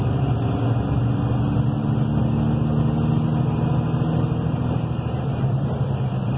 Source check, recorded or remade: recorded